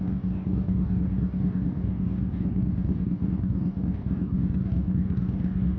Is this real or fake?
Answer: fake